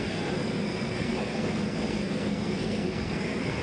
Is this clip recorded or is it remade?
remade